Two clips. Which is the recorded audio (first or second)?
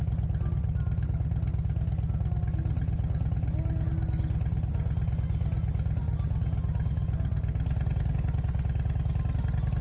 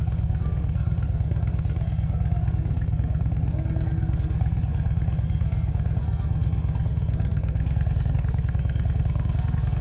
first